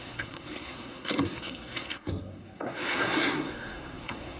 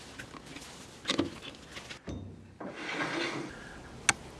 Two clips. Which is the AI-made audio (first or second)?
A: first